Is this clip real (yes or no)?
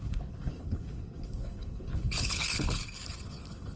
no